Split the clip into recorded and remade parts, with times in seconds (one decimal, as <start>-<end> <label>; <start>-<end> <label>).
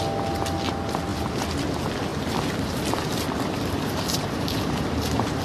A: 0.0-1.1 recorded; 1.1-1.7 remade; 1.7-2.1 recorded; 2.1-5.4 remade